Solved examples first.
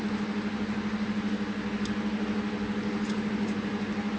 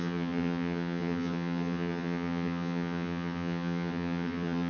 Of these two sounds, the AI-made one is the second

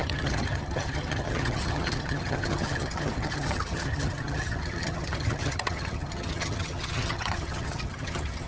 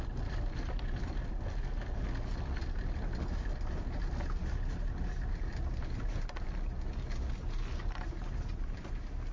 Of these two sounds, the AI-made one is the first